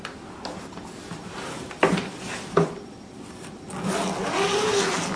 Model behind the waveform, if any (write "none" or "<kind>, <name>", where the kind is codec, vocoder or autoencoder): none